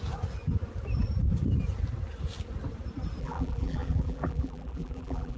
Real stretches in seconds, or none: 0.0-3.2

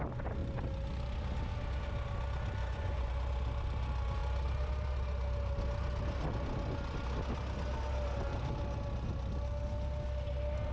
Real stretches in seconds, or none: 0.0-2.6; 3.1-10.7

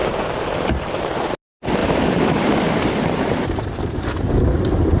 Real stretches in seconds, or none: 1.3-1.8

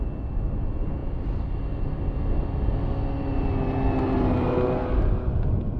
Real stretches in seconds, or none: 0.0-5.8